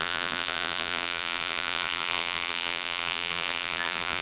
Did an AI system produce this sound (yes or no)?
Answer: yes